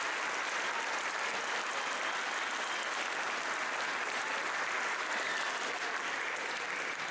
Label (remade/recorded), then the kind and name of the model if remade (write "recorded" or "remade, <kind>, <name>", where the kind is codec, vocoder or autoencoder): recorded